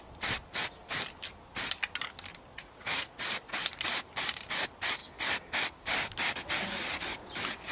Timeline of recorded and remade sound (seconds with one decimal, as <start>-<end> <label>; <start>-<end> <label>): 0.0-2.5 recorded; 2.5-3.3 remade; 3.3-7.7 recorded